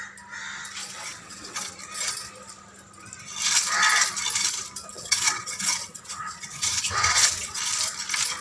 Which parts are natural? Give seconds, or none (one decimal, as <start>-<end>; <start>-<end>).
0.0-0.8; 1.7-4.9; 7.6-8.4